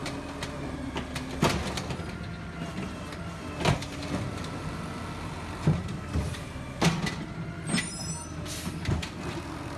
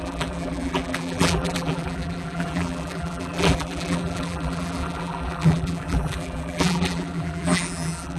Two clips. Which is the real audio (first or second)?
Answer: first